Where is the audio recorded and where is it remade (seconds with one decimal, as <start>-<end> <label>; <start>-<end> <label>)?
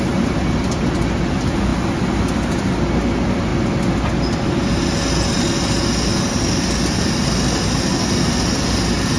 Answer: 0.0-9.2 recorded